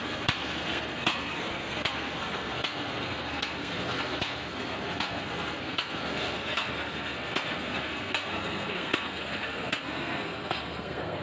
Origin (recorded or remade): remade